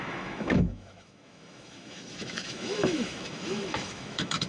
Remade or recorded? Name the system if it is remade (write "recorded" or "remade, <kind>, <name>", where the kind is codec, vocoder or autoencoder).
remade, autoencoder, DAC-VAE